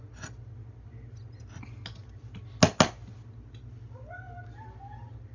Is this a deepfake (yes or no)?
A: no